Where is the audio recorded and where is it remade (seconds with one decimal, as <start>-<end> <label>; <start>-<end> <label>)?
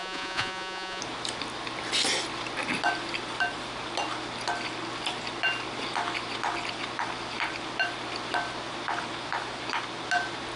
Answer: 0.0-1.0 remade; 1.0-10.6 recorded